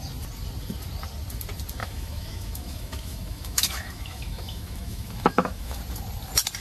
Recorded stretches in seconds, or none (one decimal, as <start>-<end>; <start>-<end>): 0.0-1.8; 5.8-6.6